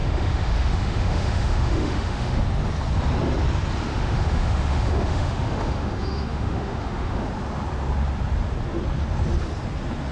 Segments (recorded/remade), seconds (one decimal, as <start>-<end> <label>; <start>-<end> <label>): 0.0-2.4 remade; 2.4-3.9 recorded; 3.9-7.3 remade; 7.3-10.1 recorded

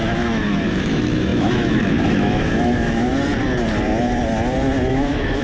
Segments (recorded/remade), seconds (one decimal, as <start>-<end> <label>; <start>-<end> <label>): 0.0-3.1 remade; 3.1-4.9 recorded; 4.9-5.4 remade

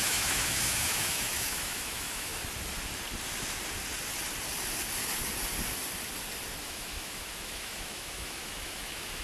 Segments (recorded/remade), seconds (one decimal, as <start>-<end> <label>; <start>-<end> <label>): 0.0-2.3 remade; 2.3-6.6 recorded; 6.6-9.2 remade

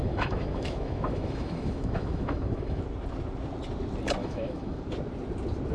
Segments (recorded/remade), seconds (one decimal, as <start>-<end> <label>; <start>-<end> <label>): 0.0-2.8 remade; 2.8-4.2 recorded; 4.2-4.8 remade; 4.8-5.7 recorded

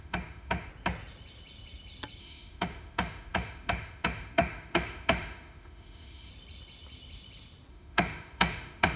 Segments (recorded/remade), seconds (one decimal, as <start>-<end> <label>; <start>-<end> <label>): 0.0-0.7 remade; 0.7-2.2 recorded; 2.2-6.3 remade; 6.3-7.7 recorded; 7.7-9.0 remade

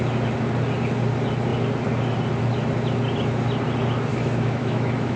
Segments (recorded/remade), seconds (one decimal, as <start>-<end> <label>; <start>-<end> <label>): 0.0-4.1 recorded; 4.1-5.2 remade

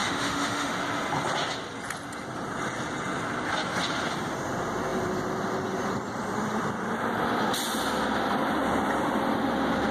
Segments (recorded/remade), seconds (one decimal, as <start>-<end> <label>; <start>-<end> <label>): 0.0-0.7 remade; 0.7-9.9 recorded